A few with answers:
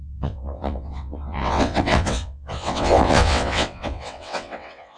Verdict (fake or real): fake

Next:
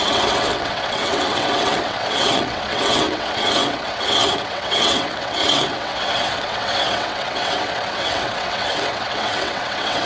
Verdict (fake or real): fake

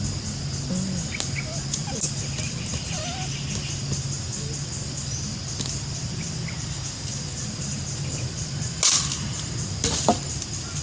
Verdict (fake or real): real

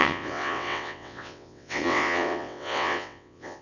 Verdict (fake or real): fake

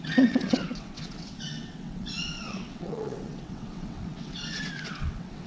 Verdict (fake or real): fake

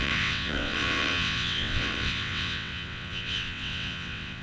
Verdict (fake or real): fake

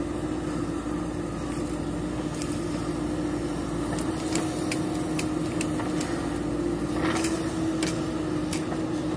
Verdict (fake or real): real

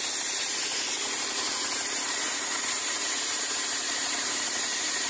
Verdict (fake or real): real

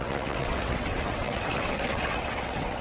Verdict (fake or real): fake